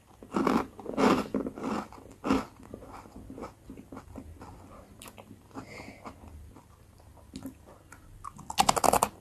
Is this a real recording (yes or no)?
yes